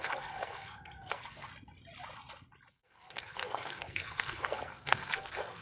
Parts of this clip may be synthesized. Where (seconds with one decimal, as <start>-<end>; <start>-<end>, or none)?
0.0-1.5; 2.7-5.6